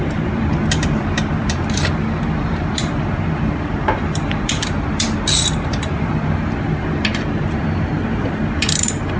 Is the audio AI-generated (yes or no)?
yes